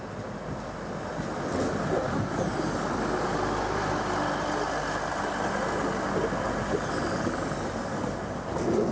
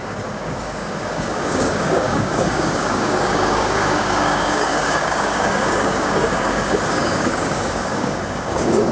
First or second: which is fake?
second